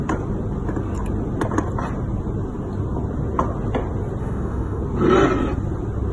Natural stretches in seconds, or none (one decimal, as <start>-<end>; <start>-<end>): 0.0-4.2; 4.8-6.1